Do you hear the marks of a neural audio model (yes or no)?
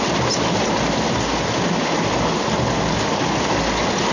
no